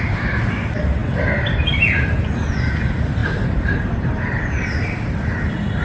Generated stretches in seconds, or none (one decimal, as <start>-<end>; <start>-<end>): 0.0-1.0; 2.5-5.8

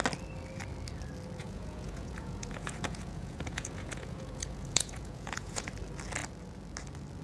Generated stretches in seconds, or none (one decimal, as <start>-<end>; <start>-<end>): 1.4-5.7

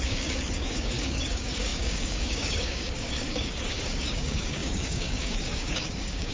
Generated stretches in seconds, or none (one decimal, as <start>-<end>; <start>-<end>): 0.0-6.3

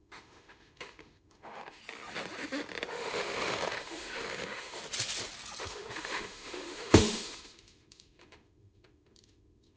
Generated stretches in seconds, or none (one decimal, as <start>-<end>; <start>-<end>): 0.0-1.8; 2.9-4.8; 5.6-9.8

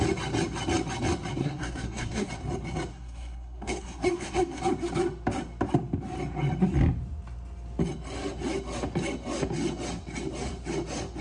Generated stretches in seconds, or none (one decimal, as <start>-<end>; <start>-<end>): 1.4-2.3; 2.9-4.6

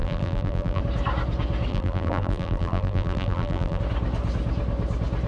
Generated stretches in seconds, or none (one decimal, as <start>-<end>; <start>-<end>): 0.0-0.8; 1.7-3.8